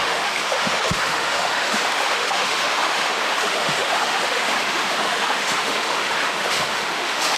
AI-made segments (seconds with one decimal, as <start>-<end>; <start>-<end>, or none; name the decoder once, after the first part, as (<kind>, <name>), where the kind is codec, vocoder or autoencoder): 0.0-7.4 (autoencoder, DAC-VAE)